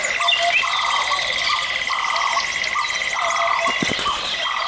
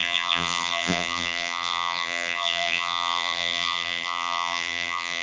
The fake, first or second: second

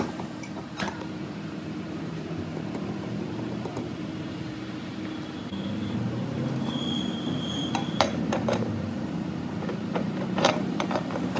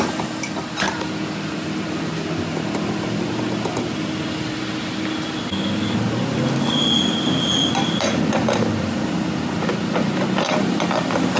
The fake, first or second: first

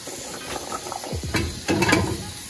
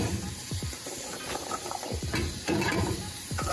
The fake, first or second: second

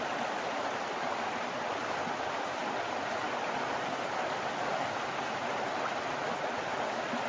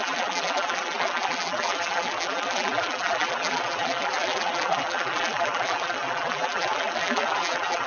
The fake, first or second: second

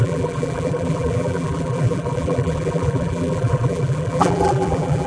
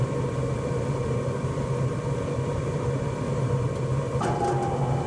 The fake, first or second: first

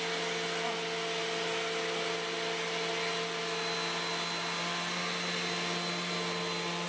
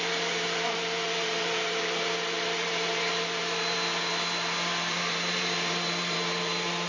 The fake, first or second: second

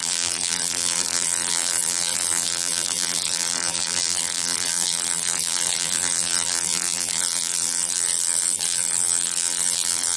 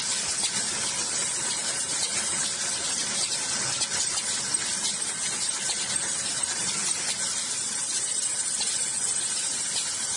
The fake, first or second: first